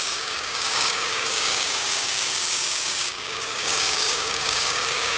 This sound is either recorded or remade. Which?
remade